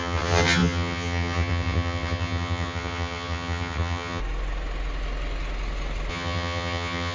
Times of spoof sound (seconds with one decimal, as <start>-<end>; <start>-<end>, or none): 0.0-4.2; 6.1-7.1

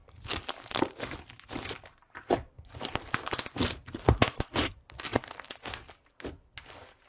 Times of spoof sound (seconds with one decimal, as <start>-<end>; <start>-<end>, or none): none